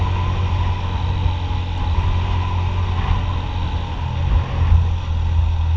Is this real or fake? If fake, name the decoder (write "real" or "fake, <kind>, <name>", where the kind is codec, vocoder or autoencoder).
real